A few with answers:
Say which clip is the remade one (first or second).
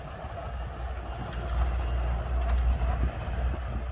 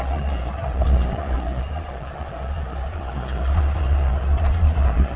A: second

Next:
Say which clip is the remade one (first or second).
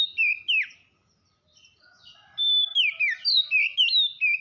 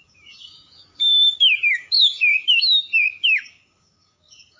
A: second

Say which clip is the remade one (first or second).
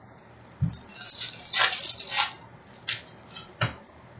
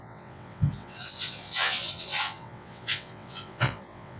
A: second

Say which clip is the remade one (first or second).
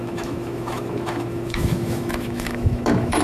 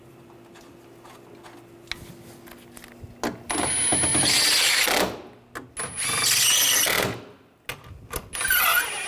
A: first